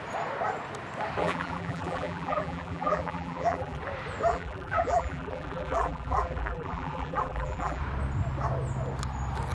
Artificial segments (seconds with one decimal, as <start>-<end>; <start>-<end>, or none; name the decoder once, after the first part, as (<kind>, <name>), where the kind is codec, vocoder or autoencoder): 1.2-3.8 (vocoder, BigVGAN v2); 4.3-7.8